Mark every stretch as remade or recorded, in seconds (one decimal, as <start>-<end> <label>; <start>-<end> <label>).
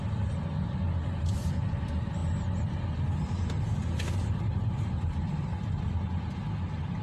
0.0-4.5 recorded; 4.5-5.7 remade; 5.7-7.0 recorded